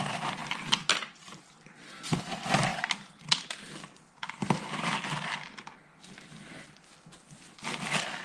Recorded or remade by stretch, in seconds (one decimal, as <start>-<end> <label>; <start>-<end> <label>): 0.0-8.2 recorded